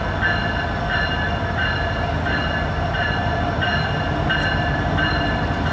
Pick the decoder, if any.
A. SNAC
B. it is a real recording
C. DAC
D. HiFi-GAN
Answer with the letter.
B